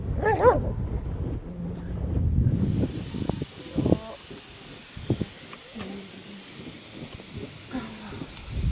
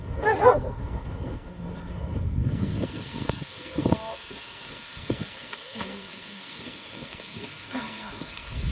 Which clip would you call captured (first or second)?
first